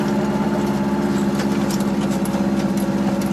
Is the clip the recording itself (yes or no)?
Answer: yes